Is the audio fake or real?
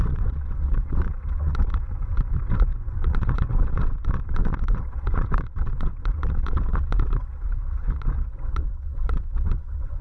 fake